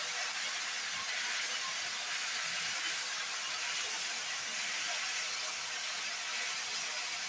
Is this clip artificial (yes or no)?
no